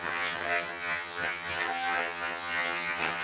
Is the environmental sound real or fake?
fake